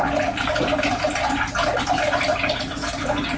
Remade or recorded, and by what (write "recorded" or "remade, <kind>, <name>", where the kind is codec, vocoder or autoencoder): recorded